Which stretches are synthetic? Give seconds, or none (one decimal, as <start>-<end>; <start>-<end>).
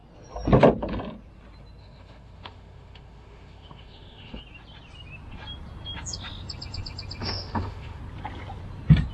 1.8-4.4; 7.2-8.0